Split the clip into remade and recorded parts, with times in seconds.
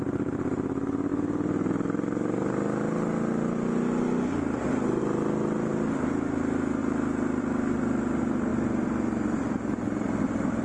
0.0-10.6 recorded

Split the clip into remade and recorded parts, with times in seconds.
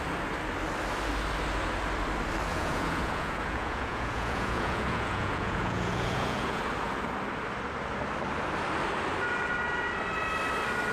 0.0-2.5 recorded; 2.5-6.6 remade; 6.6-10.9 recorded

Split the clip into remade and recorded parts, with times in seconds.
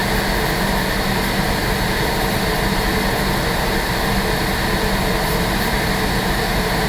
0.0-6.9 recorded